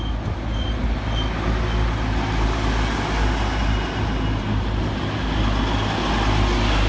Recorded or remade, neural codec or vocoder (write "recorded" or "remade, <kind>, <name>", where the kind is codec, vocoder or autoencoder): recorded